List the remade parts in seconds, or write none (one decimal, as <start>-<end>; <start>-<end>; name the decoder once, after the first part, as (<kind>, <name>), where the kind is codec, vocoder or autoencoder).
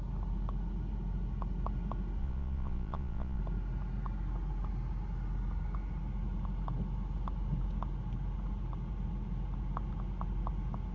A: 2.2-3.4 (vocoder, Vocos)